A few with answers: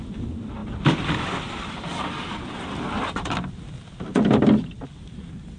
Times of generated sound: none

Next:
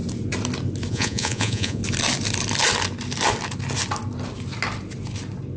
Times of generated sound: 0.9-1.8 (vocoder, Vocos)

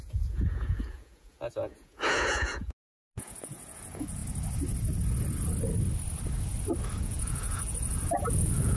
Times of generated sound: 0.0-4.2 (vocoder, Vocos); 7.0-8.8

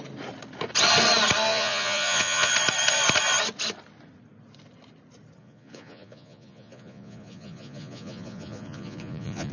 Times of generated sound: 1.5-2.5 (vocoder, Vocos); 5.4-9.5